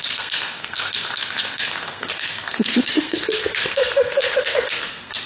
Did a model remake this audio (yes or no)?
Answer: yes